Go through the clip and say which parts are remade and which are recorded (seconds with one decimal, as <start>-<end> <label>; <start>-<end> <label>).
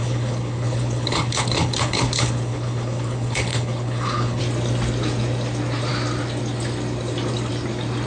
0.0-4.4 remade; 4.4-8.1 recorded